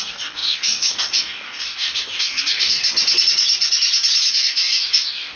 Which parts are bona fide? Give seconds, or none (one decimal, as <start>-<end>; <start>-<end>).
2.8-4.3